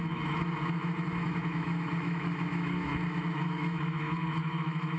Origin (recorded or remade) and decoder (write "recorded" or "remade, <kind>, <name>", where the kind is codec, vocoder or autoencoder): remade, autoencoder, DAC-VAE